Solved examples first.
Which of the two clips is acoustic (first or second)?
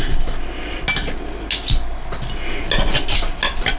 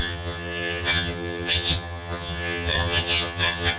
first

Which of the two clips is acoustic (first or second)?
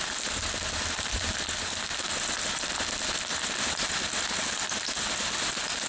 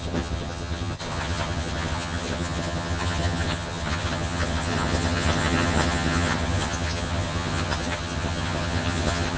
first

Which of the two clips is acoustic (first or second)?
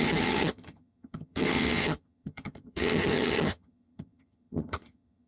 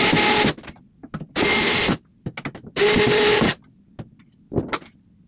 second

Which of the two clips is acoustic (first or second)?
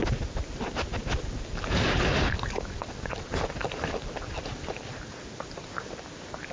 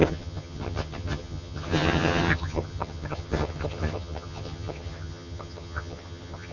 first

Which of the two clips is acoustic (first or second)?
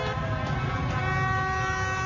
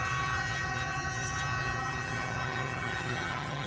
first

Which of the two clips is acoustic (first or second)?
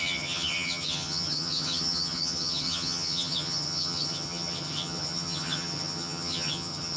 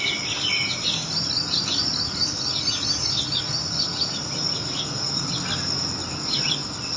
second